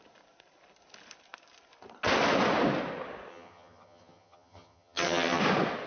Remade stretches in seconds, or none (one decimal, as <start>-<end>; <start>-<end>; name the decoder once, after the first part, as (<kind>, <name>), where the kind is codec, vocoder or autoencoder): 3.3-5.4 (vocoder, HiFi-GAN)